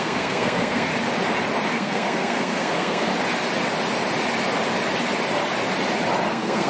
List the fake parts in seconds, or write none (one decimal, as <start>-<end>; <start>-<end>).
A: 0.0-0.9; 1.7-3.1; 6.3-6.7